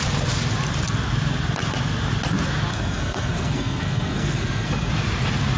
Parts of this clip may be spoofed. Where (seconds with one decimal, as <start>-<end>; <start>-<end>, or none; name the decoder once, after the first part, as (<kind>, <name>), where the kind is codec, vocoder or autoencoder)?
2.7-4.9 (codec, SNAC)